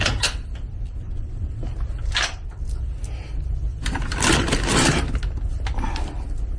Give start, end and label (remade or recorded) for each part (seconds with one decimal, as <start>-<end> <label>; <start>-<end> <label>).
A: 0.0-1.0 recorded; 1.0-1.6 remade; 1.6-6.6 recorded